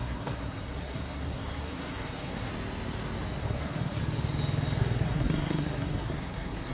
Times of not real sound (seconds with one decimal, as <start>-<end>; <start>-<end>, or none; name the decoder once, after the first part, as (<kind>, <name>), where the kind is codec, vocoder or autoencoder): 0.0-2.5 (codec, SNAC); 3.4-4.0; 4.8-6.7